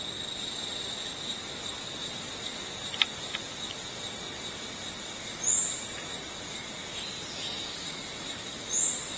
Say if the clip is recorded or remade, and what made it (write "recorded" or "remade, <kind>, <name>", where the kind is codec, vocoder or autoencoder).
recorded